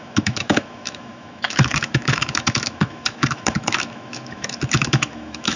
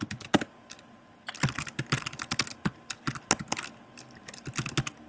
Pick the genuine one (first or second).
second